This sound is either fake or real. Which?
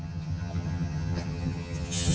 fake